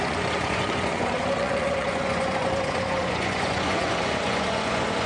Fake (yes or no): yes